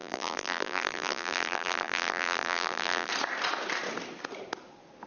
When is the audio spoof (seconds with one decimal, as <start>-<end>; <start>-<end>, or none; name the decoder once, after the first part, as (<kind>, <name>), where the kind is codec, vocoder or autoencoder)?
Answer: 0.0-3.1 (vocoder, BigVGAN v2)

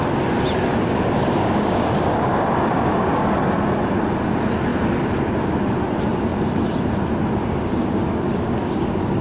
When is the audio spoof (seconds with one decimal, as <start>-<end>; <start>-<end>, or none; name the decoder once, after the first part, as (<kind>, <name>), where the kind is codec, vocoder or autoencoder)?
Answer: 0.7-3.5 (codec, DAC); 7.4-9.2

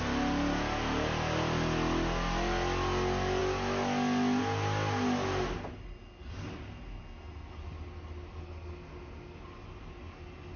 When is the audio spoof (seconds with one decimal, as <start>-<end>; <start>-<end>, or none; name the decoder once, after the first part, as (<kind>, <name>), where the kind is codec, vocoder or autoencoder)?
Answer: none

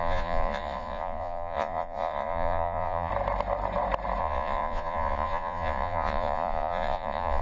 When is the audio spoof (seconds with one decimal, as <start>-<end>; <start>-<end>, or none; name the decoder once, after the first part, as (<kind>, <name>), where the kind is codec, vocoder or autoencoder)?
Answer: 0.0-3.1 (vocoder, Vocos); 4.2-7.4

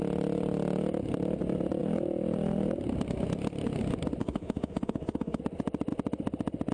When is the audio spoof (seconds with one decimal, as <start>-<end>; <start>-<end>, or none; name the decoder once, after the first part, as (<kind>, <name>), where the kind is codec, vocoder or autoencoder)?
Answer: 4.2-5.4 (autoencoder, DAC-VAE)

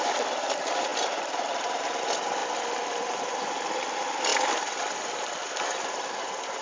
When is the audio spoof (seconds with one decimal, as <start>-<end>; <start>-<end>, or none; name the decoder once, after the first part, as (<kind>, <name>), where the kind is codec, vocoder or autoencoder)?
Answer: 0.9-2.0 (vocoder, BigVGAN v2); 2.4-3.3; 4.3-6.6

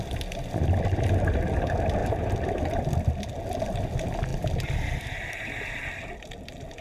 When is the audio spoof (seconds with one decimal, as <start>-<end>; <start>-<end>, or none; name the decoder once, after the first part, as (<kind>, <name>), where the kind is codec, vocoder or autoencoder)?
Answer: 2.0-2.5 (vocoder, BigVGAN v2)